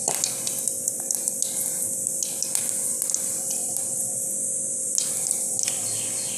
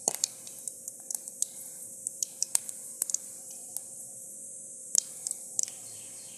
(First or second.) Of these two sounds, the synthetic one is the second